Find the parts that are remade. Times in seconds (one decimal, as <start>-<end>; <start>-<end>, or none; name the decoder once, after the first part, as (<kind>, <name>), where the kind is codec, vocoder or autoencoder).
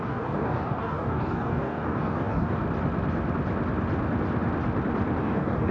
0.0-2.6 (codec, DAC); 5.2-5.7